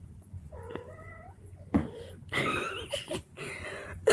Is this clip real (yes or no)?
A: no